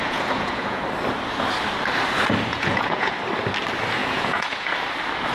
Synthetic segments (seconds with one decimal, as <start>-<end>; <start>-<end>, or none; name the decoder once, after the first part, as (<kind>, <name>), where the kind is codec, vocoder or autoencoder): 0.0-0.8 (vocoder, Vocos); 2.5-3.1; 4.0-4.7